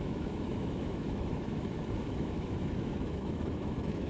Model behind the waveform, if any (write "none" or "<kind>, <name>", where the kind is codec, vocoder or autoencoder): autoencoder, DAC-VAE